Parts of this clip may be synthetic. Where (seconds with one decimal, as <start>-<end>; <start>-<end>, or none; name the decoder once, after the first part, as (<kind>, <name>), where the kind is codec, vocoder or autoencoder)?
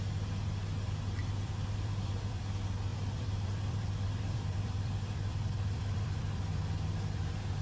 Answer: 1.2-2.4 (vocoder, BigVGAN v2); 2.9-6.2